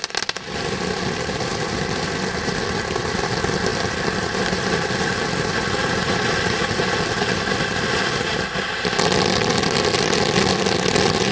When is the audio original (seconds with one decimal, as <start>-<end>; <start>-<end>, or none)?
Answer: 0.0-11.3